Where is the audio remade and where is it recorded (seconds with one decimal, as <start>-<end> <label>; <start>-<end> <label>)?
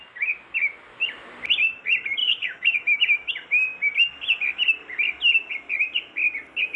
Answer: 0.0-2.2 recorded; 2.2-3.3 remade; 3.3-6.8 recorded